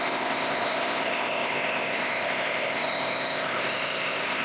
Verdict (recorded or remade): remade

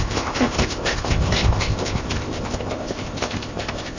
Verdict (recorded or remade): remade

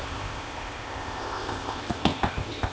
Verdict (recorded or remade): remade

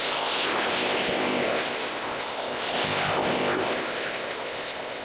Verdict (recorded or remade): remade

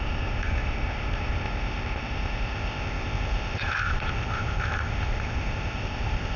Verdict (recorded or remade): remade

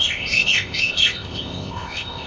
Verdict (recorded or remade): remade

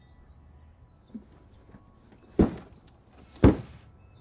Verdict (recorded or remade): recorded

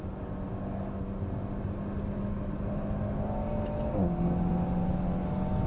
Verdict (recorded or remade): recorded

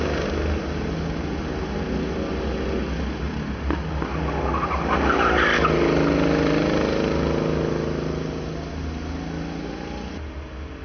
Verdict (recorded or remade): recorded